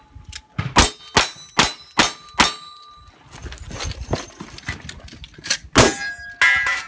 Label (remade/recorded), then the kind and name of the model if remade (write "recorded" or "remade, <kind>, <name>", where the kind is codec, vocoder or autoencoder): recorded